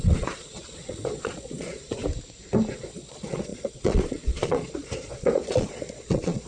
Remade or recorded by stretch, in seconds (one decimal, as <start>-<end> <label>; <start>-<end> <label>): 0.0-2.0 remade; 2.0-2.7 recorded; 2.7-6.5 remade